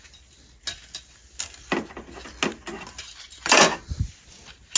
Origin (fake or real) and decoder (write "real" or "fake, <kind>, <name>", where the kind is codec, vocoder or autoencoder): real